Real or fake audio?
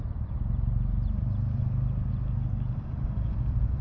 real